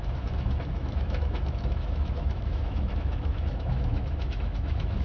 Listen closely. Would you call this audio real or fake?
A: fake